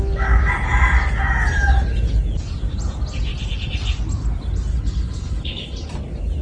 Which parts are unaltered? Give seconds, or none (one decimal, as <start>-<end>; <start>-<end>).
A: 0.0-4.7; 5.9-6.4